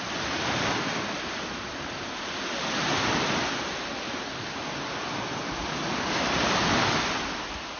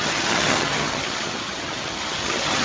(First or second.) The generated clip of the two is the second